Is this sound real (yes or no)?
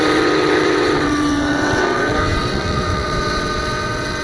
no